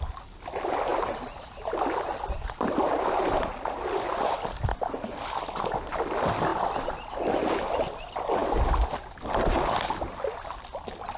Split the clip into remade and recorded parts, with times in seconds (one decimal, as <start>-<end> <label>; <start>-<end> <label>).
0.0-11.2 recorded